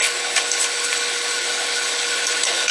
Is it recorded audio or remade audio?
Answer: remade